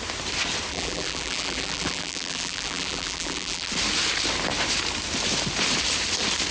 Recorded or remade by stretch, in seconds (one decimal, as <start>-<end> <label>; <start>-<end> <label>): 0.0-0.7 recorded; 0.7-3.7 remade; 3.7-6.5 recorded